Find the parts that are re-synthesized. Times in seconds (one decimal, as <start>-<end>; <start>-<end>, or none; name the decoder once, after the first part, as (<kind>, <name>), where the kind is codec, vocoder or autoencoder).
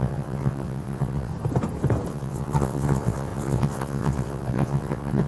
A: 0.0-1.3 (vocoder, WaveNeXt); 2.1-5.3